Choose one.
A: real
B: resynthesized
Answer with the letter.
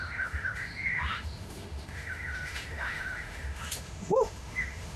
B